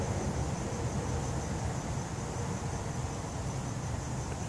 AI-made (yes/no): no